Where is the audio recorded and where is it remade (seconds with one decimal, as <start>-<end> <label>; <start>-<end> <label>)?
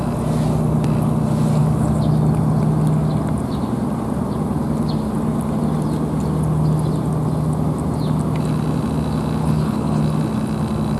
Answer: 0.0-9.4 recorded; 9.4-10.0 remade; 10.0-11.0 recorded